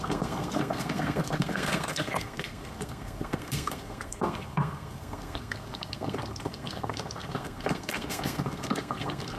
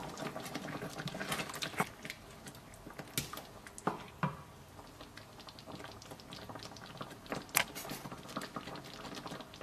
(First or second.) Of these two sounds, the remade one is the first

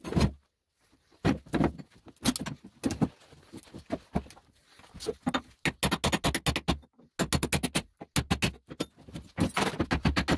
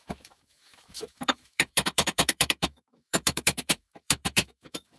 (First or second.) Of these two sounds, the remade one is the second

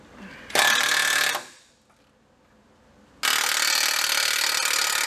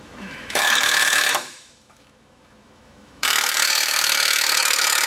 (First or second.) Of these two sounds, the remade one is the second